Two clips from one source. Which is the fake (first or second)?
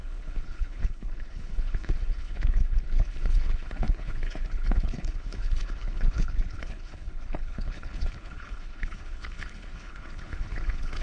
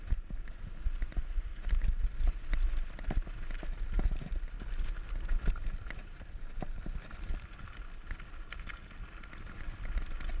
first